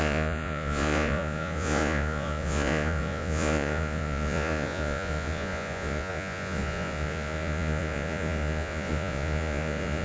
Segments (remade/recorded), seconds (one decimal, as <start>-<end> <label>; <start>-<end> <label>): 0.0-10.0 remade